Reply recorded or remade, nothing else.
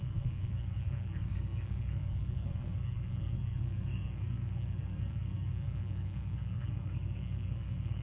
remade